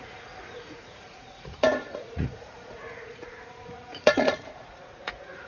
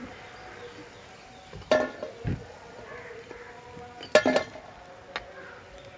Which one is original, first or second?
second